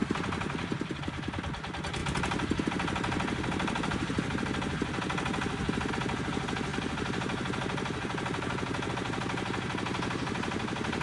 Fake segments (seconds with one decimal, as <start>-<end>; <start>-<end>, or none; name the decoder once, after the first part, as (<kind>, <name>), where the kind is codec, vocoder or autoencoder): 0.0-1.0 (vocoder, BigVGAN v2); 2.0-5.9; 6.7-8.9